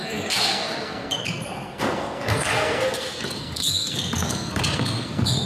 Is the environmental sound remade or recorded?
remade